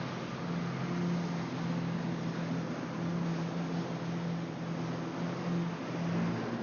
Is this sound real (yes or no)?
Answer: yes